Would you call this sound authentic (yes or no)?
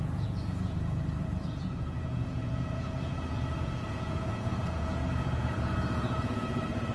no